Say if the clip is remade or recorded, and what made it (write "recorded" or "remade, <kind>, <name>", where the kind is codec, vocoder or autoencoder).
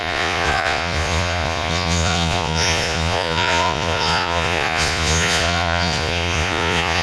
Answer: remade, vocoder, Vocos